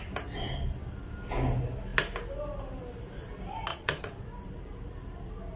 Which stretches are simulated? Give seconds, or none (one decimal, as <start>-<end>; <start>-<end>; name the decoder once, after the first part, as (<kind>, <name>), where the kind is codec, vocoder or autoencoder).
3.7-4.3 (vocoder, Vocos)